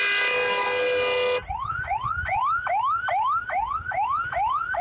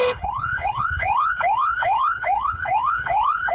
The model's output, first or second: second